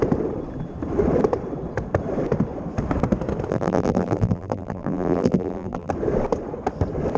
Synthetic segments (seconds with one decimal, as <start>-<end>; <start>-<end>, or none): 3.5-5.9